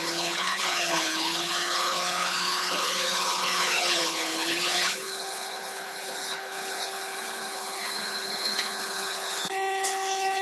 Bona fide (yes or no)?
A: no